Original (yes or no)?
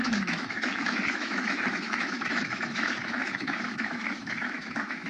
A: no